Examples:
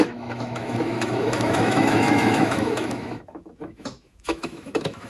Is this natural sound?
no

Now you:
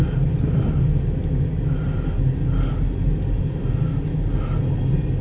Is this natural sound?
yes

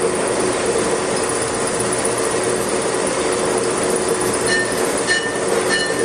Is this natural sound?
yes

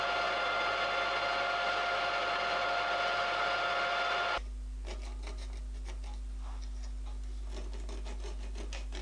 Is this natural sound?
yes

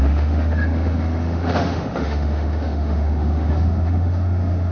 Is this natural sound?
no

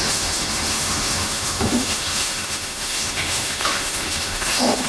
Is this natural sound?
no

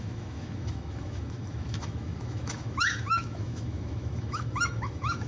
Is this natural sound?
no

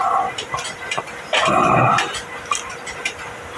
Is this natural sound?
yes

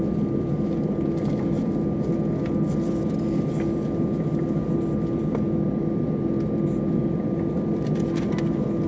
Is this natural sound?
yes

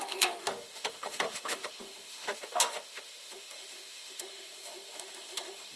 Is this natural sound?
no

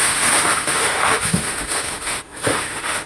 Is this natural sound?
no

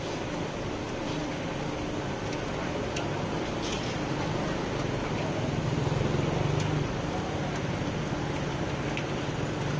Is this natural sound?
yes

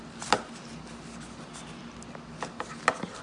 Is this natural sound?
yes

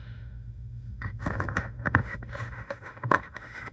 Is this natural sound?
no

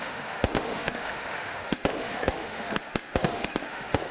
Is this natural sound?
no